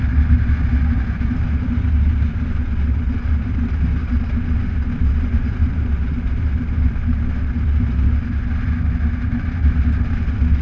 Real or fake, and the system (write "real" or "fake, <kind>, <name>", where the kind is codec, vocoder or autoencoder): real